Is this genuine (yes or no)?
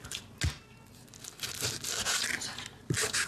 yes